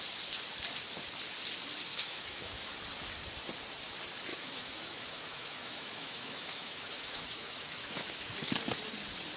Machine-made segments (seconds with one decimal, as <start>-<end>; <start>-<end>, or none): 1.9-2.6; 4.3-8.3